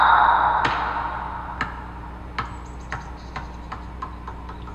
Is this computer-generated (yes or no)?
no